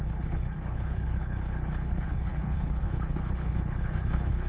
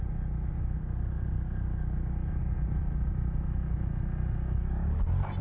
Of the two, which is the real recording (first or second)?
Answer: second